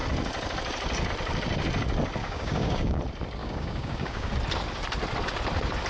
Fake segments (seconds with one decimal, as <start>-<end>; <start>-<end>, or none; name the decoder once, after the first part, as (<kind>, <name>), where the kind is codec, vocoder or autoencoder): 2.2-3.0 (codec, DAC); 3.4-4.3